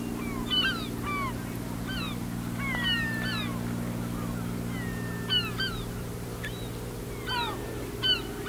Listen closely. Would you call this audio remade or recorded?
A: recorded